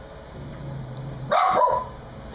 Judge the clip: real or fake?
real